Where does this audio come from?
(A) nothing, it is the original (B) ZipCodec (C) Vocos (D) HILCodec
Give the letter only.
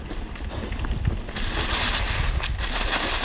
A